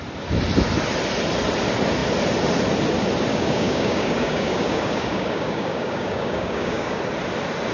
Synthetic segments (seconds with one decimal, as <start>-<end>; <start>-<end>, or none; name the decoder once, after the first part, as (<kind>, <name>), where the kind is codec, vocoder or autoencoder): 3.3-7.0 (codec, DAC)